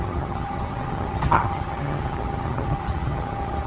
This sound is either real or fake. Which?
fake